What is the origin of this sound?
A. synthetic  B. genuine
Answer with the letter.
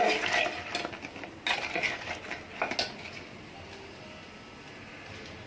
B